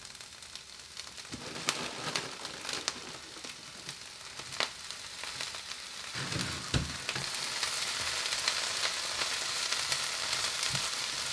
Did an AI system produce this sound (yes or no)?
no